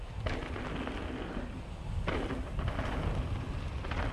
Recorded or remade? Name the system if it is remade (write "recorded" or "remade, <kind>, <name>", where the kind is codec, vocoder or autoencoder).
recorded